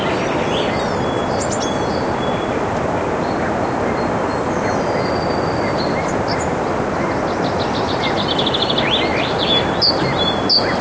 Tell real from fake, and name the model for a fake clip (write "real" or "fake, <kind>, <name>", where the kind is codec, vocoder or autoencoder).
real